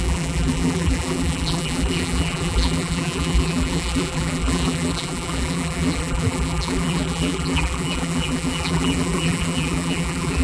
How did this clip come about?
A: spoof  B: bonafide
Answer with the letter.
A